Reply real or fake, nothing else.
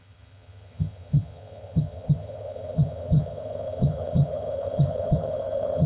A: fake